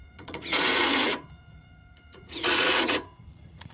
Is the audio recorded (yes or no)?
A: no